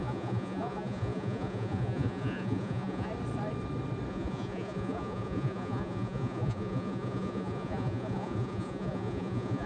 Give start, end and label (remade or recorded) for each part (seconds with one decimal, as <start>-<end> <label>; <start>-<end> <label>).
0.0-3.1 remade; 3.1-4.1 recorded; 4.1-9.7 remade